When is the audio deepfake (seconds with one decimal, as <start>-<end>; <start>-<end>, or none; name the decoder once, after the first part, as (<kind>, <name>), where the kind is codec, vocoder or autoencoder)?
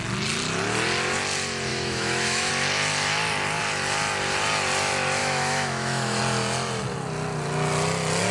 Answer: 1.7-2.5 (autoencoder, DAC-VAE); 5.2-6.2